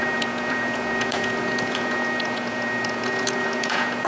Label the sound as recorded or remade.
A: remade